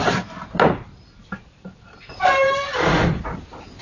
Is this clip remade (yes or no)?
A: no